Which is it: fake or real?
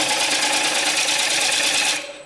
real